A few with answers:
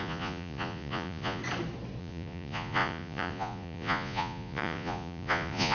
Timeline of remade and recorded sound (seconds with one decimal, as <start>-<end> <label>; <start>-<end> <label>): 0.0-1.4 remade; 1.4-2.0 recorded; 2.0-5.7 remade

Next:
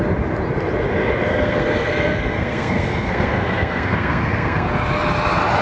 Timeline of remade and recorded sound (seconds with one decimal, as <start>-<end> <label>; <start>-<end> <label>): 0.0-1.3 recorded; 1.3-4.7 remade; 4.7-5.6 recorded

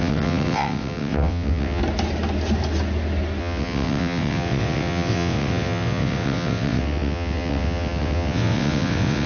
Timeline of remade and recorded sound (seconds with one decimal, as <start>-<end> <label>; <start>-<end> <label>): 0.0-1.8 remade; 1.8-3.4 recorded; 3.4-9.3 remade

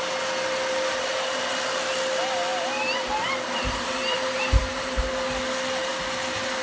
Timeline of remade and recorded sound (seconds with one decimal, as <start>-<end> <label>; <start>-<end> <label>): 0.0-2.5 recorded; 2.5-5.0 remade; 5.0-6.6 recorded

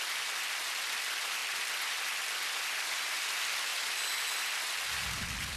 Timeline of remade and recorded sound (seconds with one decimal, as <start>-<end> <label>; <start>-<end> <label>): 0.0-5.6 recorded